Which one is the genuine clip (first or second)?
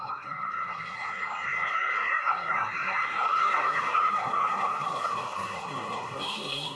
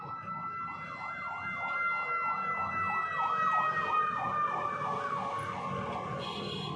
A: second